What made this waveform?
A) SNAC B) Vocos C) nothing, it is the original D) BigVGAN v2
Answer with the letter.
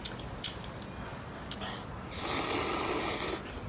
C